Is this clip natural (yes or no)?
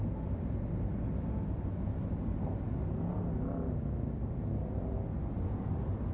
yes